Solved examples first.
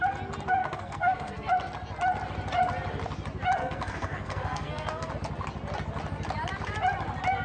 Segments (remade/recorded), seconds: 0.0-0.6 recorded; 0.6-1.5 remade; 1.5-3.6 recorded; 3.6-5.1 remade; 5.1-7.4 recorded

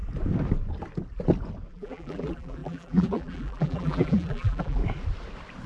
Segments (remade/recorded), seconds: 0.0-1.7 recorded; 1.7-4.8 remade; 4.8-5.7 recorded

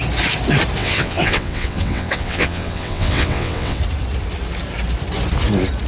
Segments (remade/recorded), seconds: 0.0-0.8 recorded; 0.8-3.8 remade; 3.8-5.9 recorded

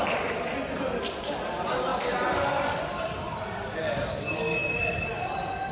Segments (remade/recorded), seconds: 0.0-5.7 recorded

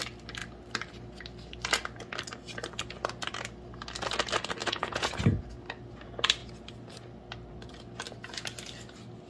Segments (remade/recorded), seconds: 0.0-4.6 recorded; 4.6-5.2 remade; 5.2-9.3 recorded

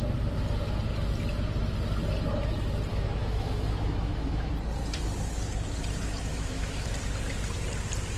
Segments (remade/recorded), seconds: 0.0-2.9 recorded; 2.9-4.5 remade; 4.5-6.3 recorded; 6.3-6.9 remade; 6.9-8.2 recorded

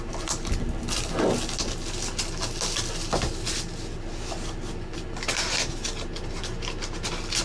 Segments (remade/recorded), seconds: 0.0-7.4 recorded